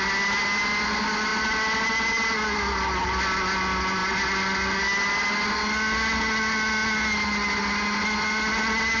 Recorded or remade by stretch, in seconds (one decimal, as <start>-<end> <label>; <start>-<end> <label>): 0.0-9.0 recorded